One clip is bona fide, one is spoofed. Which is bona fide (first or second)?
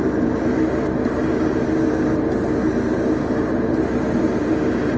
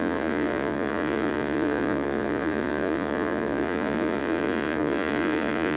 first